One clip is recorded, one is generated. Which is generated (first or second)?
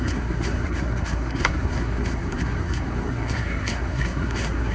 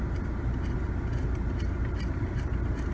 first